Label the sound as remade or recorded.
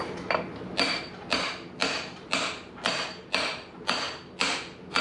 recorded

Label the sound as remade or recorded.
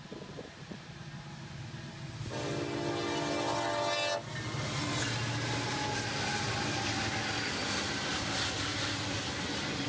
recorded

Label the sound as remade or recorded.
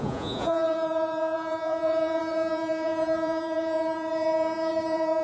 remade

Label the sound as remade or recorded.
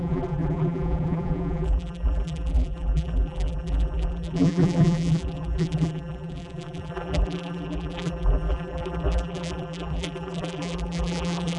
remade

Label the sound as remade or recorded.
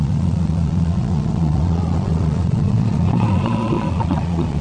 remade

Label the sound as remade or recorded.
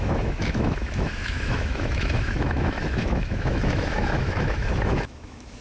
remade